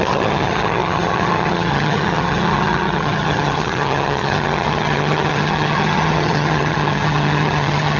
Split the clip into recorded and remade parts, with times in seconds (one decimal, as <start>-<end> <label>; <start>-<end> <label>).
0.0-8.0 remade